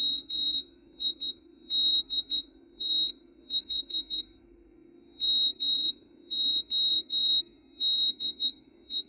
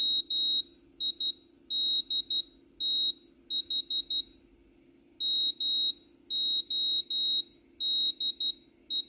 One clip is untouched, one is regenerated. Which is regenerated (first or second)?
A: first